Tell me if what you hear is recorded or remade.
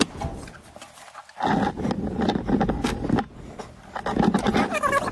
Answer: recorded